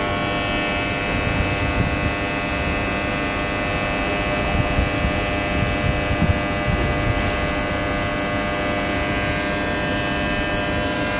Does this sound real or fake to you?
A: real